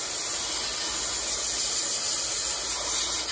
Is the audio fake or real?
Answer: real